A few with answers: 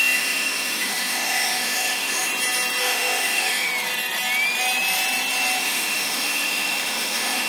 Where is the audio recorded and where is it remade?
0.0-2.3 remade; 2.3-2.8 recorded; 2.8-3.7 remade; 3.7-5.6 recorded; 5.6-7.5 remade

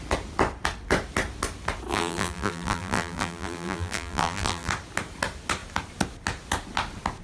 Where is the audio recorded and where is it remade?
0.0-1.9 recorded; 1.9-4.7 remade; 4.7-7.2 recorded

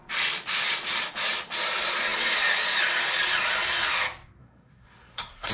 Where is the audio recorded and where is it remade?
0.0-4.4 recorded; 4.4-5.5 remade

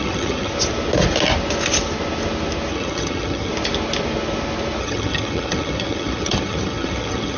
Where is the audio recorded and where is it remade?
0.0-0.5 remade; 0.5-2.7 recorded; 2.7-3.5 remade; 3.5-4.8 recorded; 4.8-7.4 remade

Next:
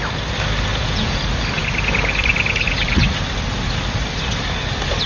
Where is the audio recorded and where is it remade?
0.0-0.7 recorded; 0.7-1.2 remade; 1.2-5.1 recorded

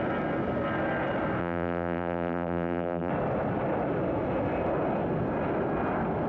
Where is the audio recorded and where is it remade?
0.0-1.4 recorded; 1.4-3.1 remade; 3.1-6.3 recorded

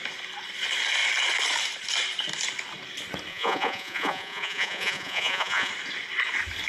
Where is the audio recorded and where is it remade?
0.0-3.3 recorded; 3.3-5.7 remade; 5.7-6.7 recorded

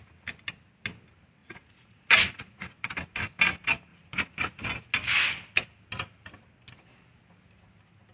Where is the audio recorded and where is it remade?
0.0-1.4 recorded; 1.4-2.9 remade; 2.9-3.9 recorded; 3.9-4.7 remade; 4.7-8.1 recorded